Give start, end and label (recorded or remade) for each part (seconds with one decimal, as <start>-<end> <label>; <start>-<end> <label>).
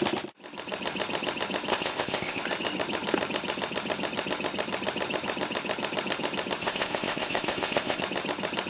0.0-1.7 recorded; 1.7-2.4 remade; 2.4-6.6 recorded; 6.6-8.0 remade; 8.0-8.7 recorded